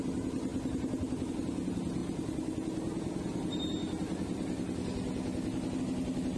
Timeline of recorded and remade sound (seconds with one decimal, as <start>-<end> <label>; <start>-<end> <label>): 0.0-6.4 recorded